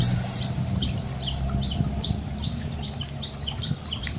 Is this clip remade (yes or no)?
no